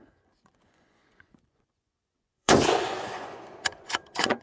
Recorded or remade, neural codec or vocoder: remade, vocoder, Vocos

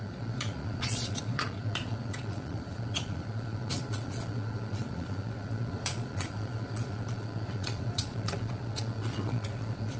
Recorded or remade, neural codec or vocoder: remade, vocoder, Vocos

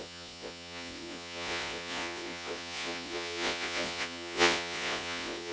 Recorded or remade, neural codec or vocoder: remade, vocoder, Vocos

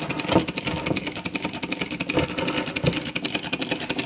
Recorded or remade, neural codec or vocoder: recorded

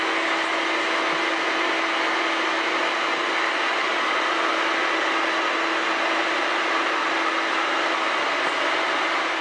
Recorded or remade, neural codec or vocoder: recorded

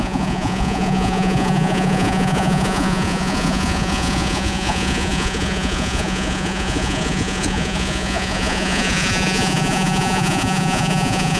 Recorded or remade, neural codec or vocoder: remade, vocoder, Vocos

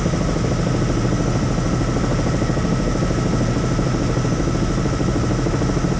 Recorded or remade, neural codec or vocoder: recorded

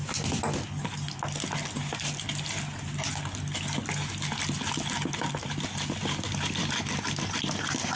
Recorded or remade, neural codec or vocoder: recorded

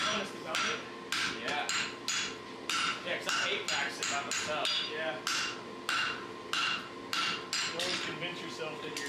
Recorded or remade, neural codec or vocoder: recorded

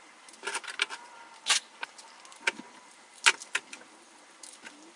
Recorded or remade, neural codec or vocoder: recorded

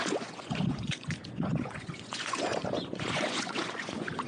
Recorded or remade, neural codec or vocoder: remade, vocoder, Vocos